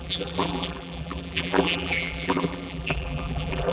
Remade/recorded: remade